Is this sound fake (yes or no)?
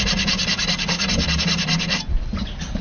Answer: no